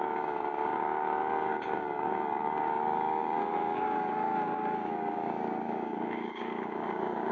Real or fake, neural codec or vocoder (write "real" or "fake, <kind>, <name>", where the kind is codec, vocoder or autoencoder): fake, codec, DAC